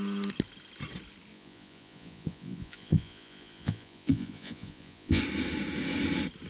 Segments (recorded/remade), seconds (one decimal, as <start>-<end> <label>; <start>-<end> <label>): 0.0-1.3 recorded; 1.3-5.2 remade; 5.2-6.5 recorded

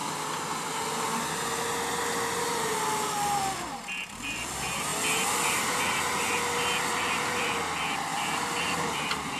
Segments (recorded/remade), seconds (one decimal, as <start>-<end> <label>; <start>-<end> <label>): 0.0-3.9 recorded; 3.9-4.9 remade; 4.9-5.5 recorded; 5.5-9.4 remade

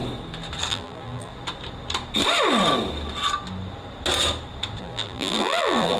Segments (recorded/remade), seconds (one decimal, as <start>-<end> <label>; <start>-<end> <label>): 0.0-0.7 recorded; 0.7-1.3 remade; 1.3-4.8 recorded; 4.8-6.0 remade

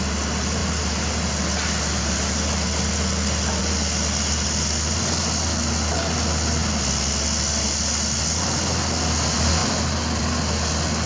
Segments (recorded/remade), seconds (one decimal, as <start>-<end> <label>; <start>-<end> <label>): 0.0-11.1 recorded